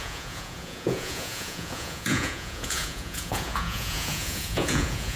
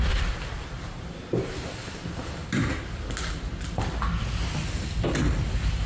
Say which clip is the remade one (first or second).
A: first